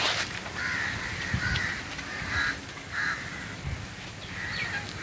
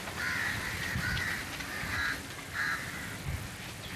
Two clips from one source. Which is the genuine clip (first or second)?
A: second